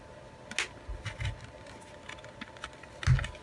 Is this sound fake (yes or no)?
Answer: no